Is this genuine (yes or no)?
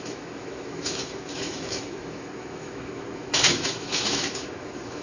no